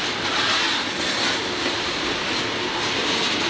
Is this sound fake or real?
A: real